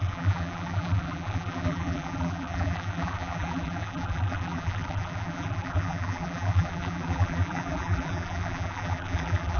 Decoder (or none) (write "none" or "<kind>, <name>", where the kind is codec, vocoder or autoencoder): vocoder, BigVGAN v2